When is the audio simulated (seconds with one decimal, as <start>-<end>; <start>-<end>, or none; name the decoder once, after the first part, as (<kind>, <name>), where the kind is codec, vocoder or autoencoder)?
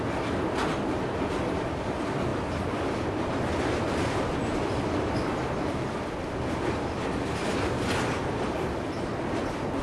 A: none